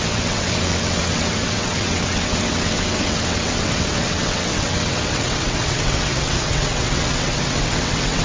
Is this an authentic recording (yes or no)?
no